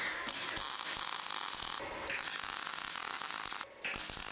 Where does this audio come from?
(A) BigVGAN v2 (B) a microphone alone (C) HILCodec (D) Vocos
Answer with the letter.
B